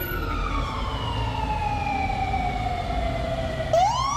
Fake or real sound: real